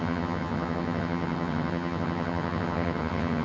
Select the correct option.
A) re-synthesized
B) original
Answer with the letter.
A